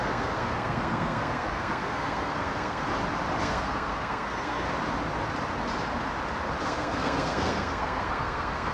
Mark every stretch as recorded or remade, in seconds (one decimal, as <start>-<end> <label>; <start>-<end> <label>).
0.0-2.9 remade; 2.9-3.4 recorded; 3.4-4.7 remade; 4.7-6.6 recorded; 6.6-8.7 remade